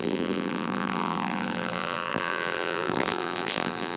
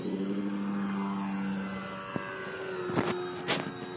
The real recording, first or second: second